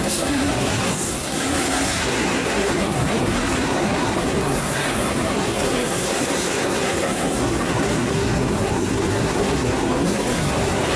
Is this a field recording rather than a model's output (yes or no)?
no